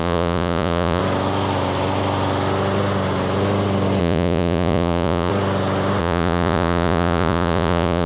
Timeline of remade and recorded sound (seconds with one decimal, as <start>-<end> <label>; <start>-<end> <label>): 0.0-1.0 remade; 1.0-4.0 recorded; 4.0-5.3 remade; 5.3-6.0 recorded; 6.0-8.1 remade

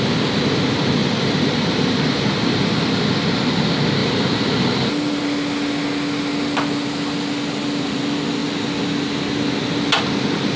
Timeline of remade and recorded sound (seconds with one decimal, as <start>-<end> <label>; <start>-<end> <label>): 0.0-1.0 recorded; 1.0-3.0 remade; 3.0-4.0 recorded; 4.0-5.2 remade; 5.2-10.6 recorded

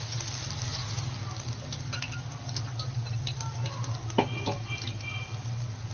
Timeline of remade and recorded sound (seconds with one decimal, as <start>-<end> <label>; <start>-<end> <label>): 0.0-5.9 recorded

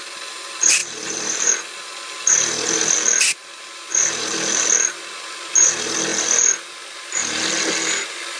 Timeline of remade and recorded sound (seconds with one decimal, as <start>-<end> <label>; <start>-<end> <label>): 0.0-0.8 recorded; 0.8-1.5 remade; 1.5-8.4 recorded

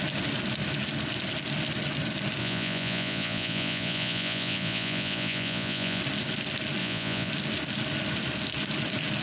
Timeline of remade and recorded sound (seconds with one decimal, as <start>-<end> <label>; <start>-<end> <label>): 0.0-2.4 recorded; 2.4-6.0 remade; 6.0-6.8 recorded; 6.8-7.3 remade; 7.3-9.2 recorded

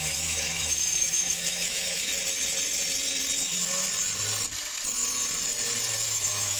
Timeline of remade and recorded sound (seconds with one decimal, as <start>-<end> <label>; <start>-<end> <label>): 0.0-2.1 remade; 2.1-6.1 recorded; 6.1-6.6 remade

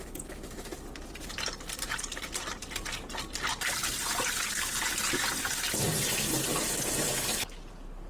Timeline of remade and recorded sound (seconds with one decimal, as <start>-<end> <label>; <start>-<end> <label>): 0.0-8.1 recorded

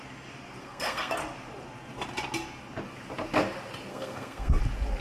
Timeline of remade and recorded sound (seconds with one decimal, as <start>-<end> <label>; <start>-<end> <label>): 0.0-0.6 recorded; 0.6-1.2 remade; 1.2-3.9 recorded; 3.9-4.6 remade; 4.6-5.0 recorded